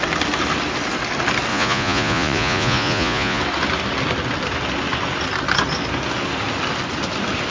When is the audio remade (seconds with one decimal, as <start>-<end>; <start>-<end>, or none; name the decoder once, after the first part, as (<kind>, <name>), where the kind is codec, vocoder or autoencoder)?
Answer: 1.5-3.4 (vocoder, Vocos)